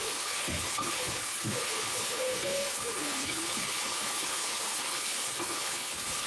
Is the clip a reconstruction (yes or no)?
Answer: yes